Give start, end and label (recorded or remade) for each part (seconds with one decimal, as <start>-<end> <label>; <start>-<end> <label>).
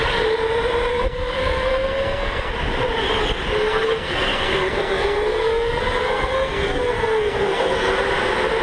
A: 0.0-0.9 recorded; 0.9-2.5 remade; 2.5-3.6 recorded; 3.6-7.9 remade; 7.9-8.6 recorded